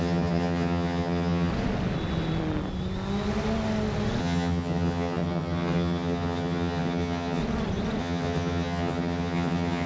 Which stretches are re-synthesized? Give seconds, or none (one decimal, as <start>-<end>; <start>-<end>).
0.0-1.5; 4.2-7.4; 8.0-9.9